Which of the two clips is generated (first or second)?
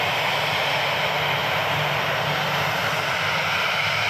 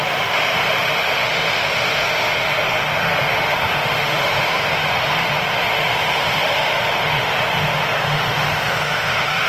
second